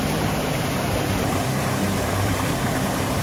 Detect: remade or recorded remade